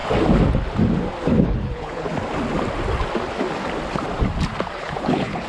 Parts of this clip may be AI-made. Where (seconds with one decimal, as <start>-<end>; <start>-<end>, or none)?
1.2-2.1; 4.8-5.5